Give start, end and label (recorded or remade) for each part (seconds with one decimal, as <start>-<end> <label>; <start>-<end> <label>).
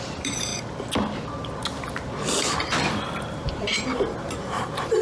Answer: 0.0-0.5 remade; 0.5-3.5 recorded; 3.5-5.0 remade